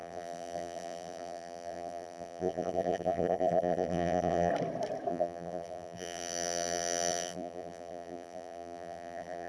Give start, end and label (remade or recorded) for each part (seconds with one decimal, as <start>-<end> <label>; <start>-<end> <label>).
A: 0.0-4.5 remade; 4.5-5.1 recorded; 5.1-9.5 remade

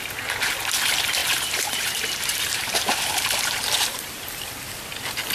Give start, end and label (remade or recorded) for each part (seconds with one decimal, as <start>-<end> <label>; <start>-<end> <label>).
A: 0.0-1.2 recorded; 1.2-4.4 remade; 4.4-5.3 recorded